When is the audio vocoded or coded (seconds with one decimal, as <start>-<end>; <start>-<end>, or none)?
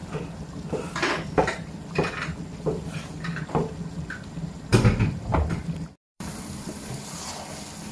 4.7-7.0